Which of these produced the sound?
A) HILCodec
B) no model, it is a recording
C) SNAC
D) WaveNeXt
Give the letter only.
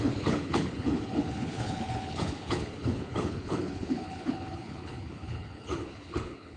A